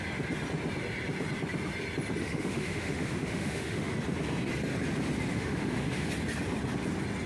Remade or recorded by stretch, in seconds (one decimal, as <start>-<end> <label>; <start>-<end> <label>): 0.0-2.2 recorded; 2.2-3.9 remade; 3.9-5.3 recorded; 5.3-6.1 remade; 6.1-7.3 recorded